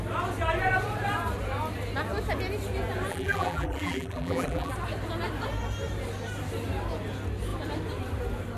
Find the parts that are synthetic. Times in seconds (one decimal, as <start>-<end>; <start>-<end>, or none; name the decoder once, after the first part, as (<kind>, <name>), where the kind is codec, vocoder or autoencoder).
3.1-4.7 (vocoder, BigVGAN v2)